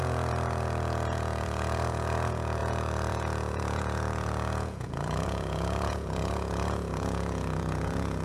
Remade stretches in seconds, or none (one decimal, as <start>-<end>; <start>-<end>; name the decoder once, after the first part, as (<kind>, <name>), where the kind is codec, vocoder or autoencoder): 0.0-8.2 (vocoder, Vocos)